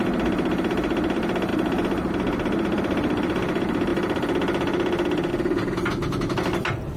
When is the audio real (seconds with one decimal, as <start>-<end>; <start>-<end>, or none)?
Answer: 0.0-7.0